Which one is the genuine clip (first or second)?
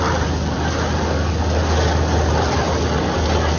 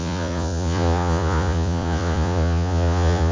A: first